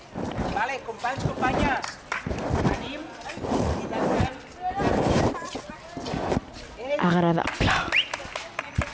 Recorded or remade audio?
recorded